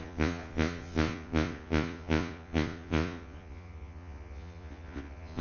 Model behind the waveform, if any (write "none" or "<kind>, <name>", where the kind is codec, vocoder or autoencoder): vocoder, Vocos